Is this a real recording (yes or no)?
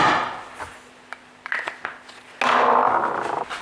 yes